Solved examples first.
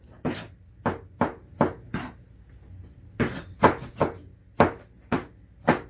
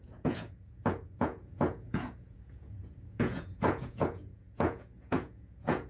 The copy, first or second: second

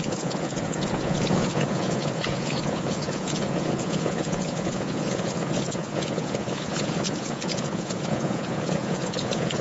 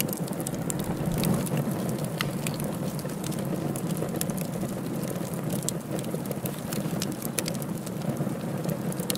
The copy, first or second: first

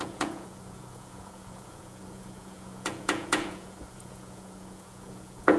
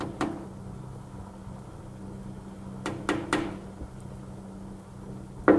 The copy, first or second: first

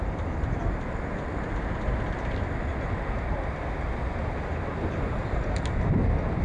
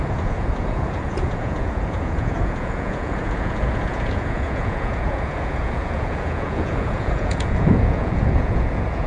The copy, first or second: second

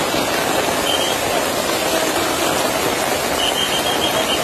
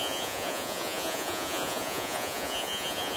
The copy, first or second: second